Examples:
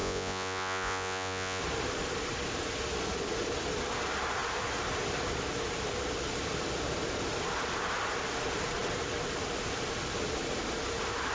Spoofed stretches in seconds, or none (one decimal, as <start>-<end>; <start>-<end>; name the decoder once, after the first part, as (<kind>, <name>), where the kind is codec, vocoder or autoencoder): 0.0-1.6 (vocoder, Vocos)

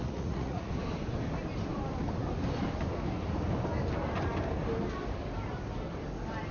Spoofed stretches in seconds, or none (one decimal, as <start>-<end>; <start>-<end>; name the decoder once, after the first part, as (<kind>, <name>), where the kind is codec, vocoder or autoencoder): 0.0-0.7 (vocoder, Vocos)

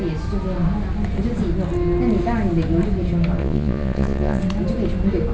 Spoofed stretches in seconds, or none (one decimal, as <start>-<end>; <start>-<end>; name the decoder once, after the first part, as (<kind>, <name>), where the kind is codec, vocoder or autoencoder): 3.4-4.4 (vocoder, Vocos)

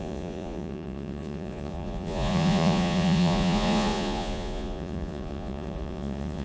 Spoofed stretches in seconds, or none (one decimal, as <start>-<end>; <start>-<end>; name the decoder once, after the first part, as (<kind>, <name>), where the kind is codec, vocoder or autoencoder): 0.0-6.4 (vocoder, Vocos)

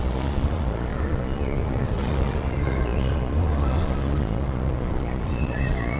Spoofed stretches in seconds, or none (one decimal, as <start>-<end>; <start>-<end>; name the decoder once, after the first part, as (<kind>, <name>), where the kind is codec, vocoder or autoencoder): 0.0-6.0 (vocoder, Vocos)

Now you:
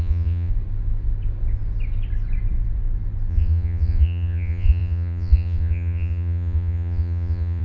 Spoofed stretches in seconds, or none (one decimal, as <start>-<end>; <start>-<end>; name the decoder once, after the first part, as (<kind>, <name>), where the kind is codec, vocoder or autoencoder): 0.0-0.5 (vocoder, Vocos); 3.3-7.6

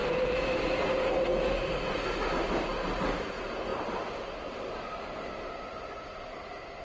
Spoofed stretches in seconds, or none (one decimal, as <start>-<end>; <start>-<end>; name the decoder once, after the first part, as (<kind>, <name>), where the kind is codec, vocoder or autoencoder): 0.0-0.6 (vocoder, Vocos)

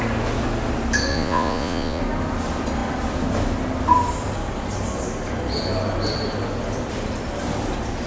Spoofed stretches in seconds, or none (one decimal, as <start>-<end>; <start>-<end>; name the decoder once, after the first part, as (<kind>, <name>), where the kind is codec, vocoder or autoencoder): 1.1-2.0 (vocoder, Vocos)